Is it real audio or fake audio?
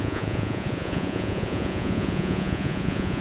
fake